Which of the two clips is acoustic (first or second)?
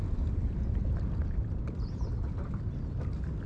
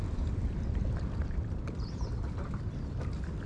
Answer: first